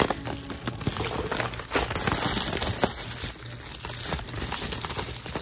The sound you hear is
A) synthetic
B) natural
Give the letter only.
B